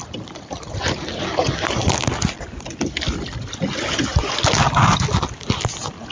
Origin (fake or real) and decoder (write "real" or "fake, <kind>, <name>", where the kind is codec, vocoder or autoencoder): real